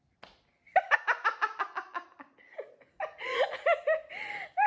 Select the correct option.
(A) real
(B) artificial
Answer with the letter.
A